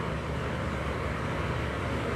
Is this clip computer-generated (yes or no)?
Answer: yes